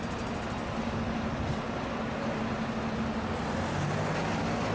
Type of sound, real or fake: real